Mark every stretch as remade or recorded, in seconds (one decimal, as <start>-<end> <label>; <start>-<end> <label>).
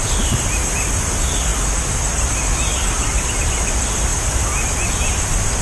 0.0-5.6 recorded